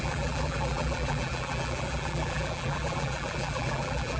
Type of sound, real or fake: fake